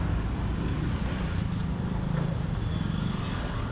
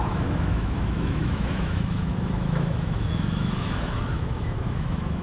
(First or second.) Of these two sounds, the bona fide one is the first